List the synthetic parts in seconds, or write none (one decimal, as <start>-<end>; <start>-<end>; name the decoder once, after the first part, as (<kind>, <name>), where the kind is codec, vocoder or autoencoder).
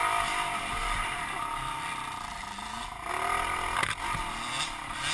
none